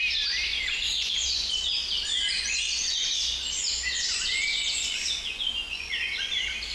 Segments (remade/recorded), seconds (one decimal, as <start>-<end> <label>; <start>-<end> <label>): 0.0-0.5 recorded; 0.5-1.5 remade; 1.5-2.2 recorded; 2.2-6.2 remade; 6.2-6.7 recorded